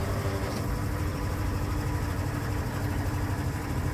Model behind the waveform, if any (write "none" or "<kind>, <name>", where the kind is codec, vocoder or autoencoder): vocoder, BigVGAN v2